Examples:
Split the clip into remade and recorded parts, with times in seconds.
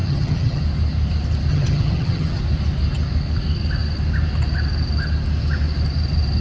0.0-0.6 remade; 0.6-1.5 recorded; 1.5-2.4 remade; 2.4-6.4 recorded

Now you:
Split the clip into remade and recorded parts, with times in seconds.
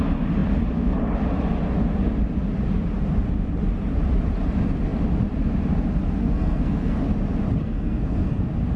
0.0-6.2 recorded; 6.2-7.0 remade; 7.0-7.6 recorded; 7.6-8.4 remade; 8.4-8.8 recorded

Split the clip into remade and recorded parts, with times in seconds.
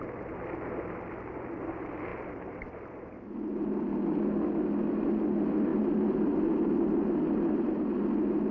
0.0-8.5 recorded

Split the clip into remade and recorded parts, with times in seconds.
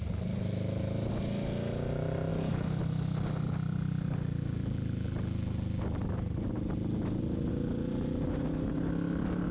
0.0-9.5 recorded